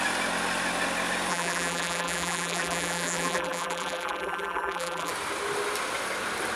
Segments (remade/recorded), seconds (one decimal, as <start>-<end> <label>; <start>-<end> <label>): 0.0-1.3 recorded; 1.3-5.1 remade; 5.1-6.6 recorded